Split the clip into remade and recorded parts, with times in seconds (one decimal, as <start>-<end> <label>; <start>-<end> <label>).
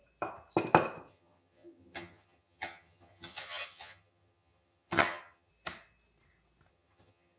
0.0-1.1 recorded; 1.1-5.5 remade; 5.5-6.7 recorded; 6.7-7.4 remade